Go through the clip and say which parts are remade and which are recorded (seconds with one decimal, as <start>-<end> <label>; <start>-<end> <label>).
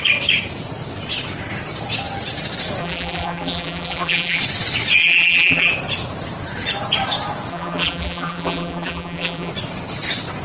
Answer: 0.0-2.8 recorded; 2.8-4.4 remade; 4.4-5.0 recorded; 5.0-5.7 remade; 5.7-7.5 recorded; 7.5-9.5 remade; 9.5-10.4 recorded